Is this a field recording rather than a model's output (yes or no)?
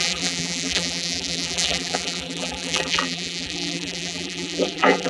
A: no